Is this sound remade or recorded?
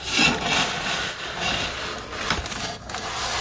recorded